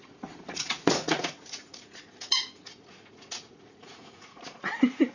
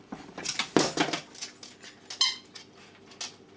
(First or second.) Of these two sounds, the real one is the second